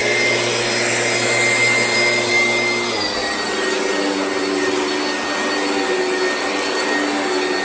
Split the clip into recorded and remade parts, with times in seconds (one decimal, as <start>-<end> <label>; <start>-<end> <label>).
0.0-7.6 recorded

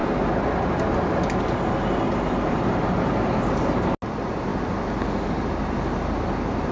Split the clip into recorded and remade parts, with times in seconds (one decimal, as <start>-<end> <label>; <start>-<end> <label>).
0.0-6.7 recorded

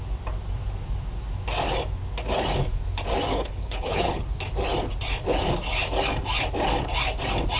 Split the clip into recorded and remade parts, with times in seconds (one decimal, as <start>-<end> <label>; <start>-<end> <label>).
0.0-3.3 recorded; 3.3-4.2 remade; 4.2-7.6 recorded

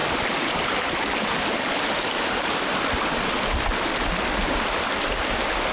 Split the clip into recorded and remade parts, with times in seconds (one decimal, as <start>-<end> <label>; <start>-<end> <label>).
0.0-3.4 remade; 3.4-5.7 recorded

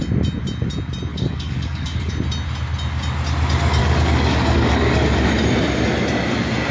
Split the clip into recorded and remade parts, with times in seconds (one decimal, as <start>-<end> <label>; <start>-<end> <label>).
0.0-1.1 recorded; 1.1-2.1 remade; 2.1-3.8 recorded; 3.8-5.3 remade; 5.3-6.7 recorded

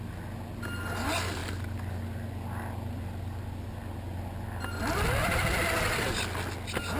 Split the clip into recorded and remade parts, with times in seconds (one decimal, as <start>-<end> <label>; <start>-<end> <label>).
0.0-7.0 recorded

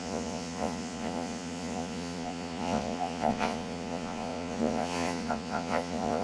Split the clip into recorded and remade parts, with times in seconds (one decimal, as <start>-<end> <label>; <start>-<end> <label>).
0.0-6.2 remade

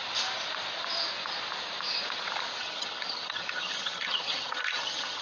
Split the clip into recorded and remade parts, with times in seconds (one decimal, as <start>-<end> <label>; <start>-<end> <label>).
0.0-2.6 recorded; 2.6-5.2 remade